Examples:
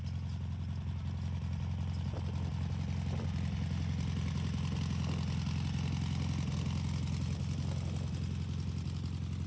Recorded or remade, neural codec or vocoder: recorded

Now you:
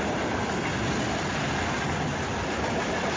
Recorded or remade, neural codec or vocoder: recorded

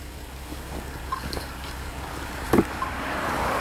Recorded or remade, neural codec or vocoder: remade, codec, DAC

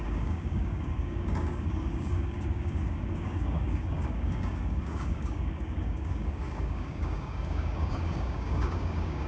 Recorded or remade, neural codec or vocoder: remade, codec, DAC